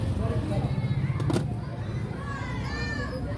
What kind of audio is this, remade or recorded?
recorded